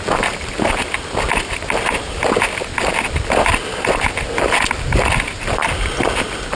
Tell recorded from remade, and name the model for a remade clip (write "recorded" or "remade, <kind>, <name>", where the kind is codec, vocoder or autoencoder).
recorded